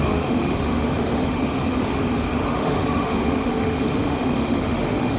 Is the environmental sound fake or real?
fake